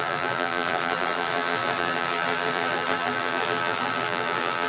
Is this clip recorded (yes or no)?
no